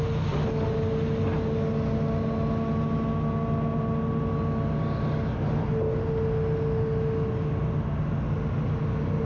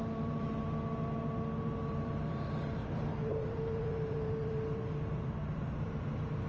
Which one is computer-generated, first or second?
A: second